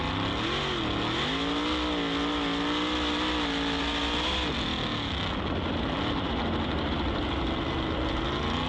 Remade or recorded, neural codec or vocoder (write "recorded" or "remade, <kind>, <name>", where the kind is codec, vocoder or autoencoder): recorded